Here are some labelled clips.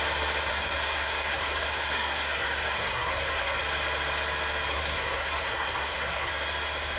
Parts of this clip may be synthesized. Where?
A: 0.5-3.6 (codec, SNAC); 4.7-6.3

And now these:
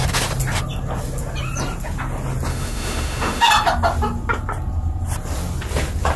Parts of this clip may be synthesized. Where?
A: 2.5-3.5 (autoencoder, DAC-VAE)

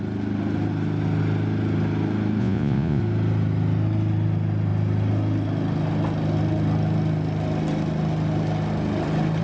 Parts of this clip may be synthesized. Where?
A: 2.4-3.0 (vocoder, Vocos)

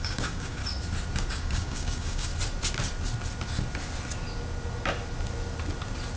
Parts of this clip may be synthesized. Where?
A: 0.0-0.6 (codec, DAC); 1.3-2.3

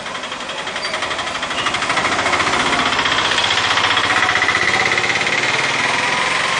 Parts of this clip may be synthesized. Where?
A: none

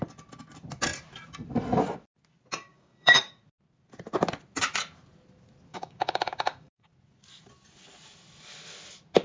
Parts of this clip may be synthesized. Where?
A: 2.7-3.4 (codec, DAC); 5.7-6.9

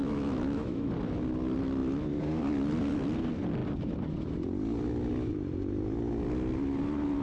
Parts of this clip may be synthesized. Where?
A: 0.0-0.9 (autoencoder, DAC-VAE)